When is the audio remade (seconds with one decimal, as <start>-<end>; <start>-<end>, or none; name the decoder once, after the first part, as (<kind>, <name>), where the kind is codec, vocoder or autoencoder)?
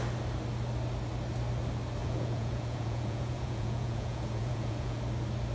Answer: 2.0-5.0 (vocoder, Vocos)